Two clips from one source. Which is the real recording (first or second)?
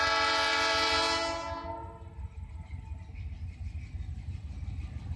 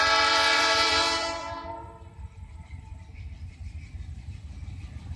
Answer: first